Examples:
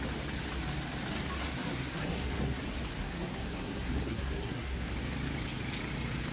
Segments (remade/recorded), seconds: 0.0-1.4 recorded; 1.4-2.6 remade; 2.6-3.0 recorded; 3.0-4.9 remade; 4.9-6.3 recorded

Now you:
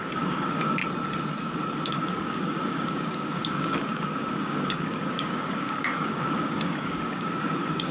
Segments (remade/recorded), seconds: 0.0-0.8 remade; 0.8-1.9 recorded; 1.9-7.9 remade